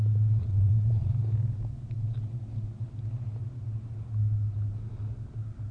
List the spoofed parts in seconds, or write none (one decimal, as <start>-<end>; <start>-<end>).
0.4-1.1